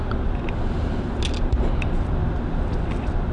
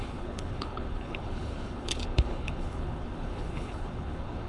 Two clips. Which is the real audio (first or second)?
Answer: first